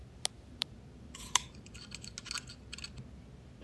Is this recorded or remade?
recorded